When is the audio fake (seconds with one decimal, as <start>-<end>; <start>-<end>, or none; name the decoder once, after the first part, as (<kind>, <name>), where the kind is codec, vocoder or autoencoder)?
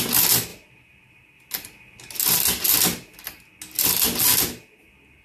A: none